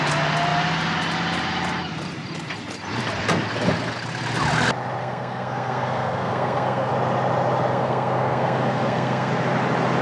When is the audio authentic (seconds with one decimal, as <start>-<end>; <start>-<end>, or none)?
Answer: 0.0-5.0; 6.9-7.7; 9.3-10.0